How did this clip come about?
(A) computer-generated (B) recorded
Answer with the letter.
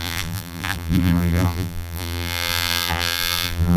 A